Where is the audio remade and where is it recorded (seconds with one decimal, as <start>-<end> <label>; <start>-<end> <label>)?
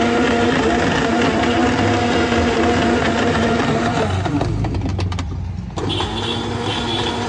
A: 0.0-7.3 recorded